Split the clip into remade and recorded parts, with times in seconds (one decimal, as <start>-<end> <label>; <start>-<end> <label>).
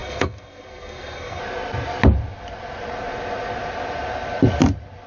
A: 0.0-1.4 remade; 1.4-5.1 recorded